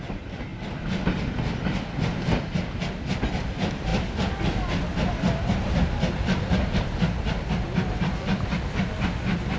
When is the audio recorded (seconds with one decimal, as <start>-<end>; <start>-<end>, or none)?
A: 0.0-9.6